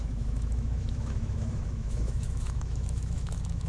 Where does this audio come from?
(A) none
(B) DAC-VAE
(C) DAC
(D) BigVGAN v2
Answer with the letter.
B